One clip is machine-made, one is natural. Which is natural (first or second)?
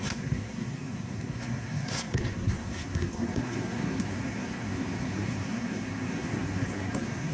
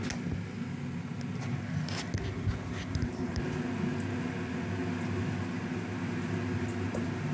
second